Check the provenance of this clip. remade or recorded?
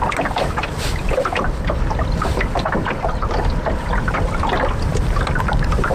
recorded